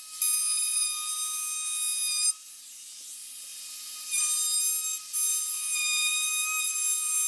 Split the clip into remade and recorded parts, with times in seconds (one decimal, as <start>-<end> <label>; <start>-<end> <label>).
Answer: 0.0-5.3 recorded; 5.3-7.3 remade